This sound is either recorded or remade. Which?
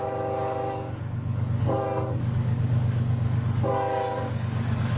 remade